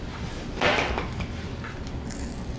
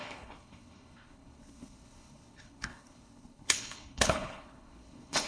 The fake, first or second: second